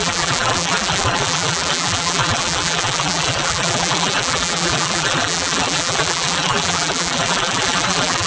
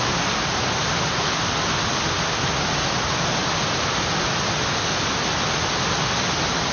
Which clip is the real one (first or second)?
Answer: second